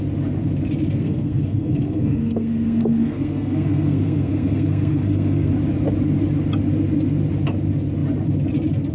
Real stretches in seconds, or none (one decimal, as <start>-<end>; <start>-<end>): 0.0-1.0; 5.5-8.9